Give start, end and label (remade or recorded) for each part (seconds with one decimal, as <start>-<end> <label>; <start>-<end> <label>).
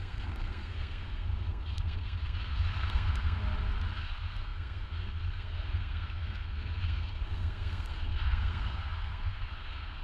0.0-3.4 remade; 3.4-4.0 recorded; 4.0-10.0 remade